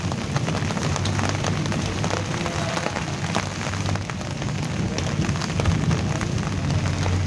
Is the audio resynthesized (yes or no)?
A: no